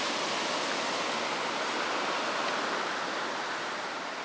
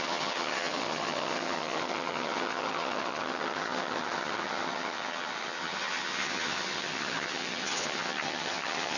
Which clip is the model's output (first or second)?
second